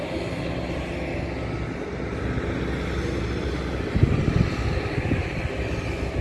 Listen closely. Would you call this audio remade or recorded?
recorded